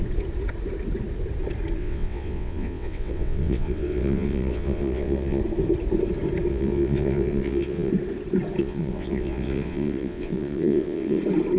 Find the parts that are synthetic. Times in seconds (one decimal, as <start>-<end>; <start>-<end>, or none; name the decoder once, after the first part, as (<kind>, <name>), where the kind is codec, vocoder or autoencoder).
1.8-5.4 (vocoder, WaveNeXt); 6.5-7.9; 8.6-11.2